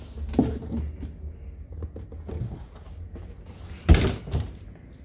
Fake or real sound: real